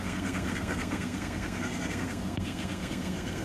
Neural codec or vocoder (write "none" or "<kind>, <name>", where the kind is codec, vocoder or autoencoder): codec, SNAC